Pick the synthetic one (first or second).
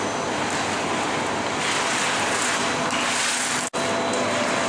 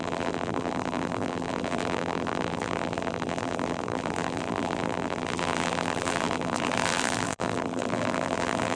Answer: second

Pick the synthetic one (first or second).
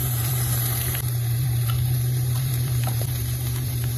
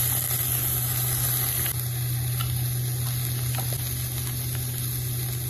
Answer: first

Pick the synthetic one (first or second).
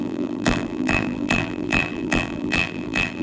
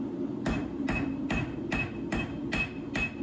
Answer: first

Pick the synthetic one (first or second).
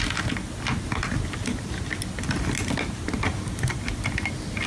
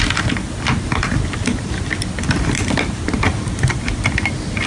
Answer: second